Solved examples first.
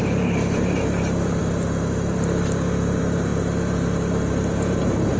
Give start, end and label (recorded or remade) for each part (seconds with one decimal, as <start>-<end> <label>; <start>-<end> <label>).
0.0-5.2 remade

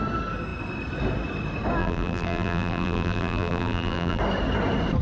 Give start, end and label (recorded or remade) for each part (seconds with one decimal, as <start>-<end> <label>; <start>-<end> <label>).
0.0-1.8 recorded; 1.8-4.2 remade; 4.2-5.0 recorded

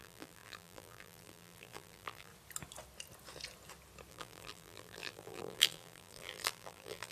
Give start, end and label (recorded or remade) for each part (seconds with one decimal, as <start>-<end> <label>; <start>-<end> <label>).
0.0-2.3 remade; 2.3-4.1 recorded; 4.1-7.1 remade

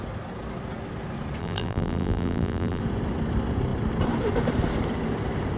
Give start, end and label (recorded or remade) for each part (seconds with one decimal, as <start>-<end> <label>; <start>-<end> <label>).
0.0-1.4 recorded; 1.4-2.8 remade; 2.8-5.6 recorded

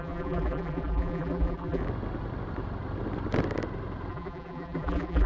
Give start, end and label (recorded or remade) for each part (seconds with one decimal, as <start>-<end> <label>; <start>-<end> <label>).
0.0-1.8 remade; 1.8-4.1 recorded; 4.1-5.3 remade

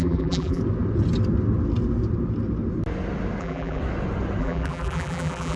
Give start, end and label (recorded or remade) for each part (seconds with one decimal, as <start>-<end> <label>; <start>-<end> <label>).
0.0-0.6 remade; 0.6-3.4 recorded; 3.4-3.8 remade; 3.8-4.4 recorded; 4.4-5.6 remade

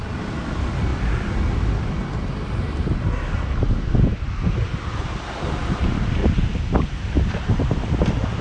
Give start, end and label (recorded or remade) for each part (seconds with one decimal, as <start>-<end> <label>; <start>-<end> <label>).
0.0-8.4 recorded